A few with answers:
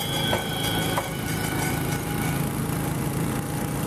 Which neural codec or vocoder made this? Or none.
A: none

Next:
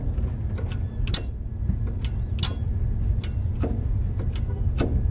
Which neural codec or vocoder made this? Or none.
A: none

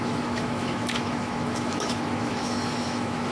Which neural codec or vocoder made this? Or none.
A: autoencoder, DAC-VAE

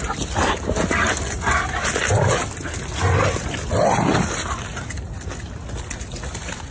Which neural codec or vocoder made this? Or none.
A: none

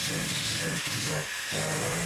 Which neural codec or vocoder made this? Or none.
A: autoencoder, DAC-VAE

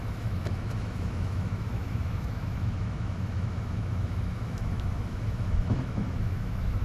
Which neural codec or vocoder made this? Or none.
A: autoencoder, DAC-VAE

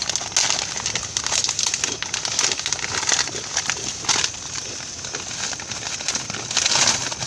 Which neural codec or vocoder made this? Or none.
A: none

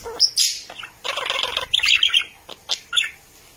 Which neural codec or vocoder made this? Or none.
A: none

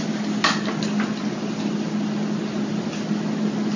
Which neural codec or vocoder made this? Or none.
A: none